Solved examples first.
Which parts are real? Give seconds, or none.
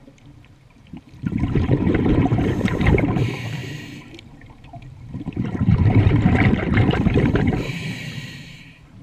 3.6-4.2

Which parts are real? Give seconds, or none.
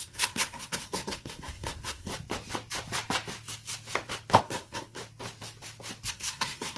2.1-4.4; 5.0-6.1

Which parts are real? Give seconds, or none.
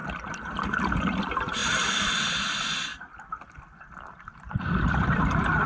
0.0-5.7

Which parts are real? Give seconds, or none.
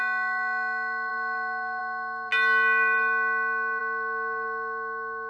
0.0-5.3